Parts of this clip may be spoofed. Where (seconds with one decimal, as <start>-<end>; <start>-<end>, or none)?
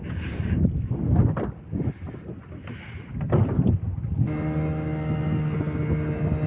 none